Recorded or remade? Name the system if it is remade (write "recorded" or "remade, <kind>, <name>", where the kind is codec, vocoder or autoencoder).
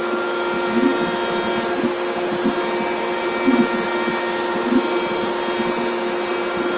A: recorded